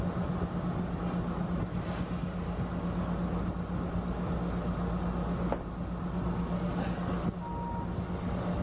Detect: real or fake real